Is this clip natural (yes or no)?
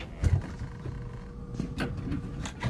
yes